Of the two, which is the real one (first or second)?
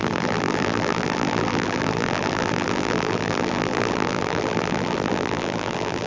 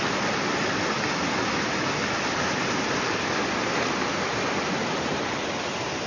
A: second